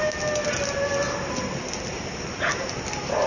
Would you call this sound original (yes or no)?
yes